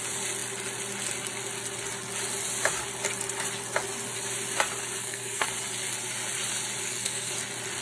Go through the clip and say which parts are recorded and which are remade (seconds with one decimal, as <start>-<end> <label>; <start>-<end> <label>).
0.0-5.0 recorded; 5.0-5.5 remade; 5.5-6.8 recorded; 6.8-7.3 remade; 7.3-7.8 recorded